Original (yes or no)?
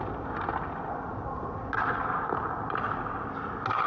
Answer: yes